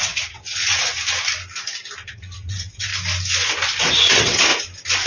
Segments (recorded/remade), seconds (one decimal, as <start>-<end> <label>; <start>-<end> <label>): 0.0-1.0 remade; 1.0-2.1 recorded; 2.1-2.9 remade; 2.9-3.8 recorded; 3.8-4.5 remade; 4.5-5.1 recorded